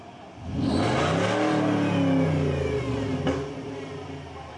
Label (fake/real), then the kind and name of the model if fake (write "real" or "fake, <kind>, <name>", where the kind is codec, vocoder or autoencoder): real